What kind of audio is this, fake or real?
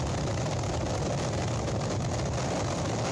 real